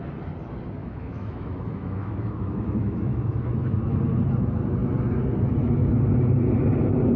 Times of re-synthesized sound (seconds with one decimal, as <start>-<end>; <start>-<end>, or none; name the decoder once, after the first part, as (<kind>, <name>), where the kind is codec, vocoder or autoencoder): 0.8-4.0 (autoencoder, DAC-VAE)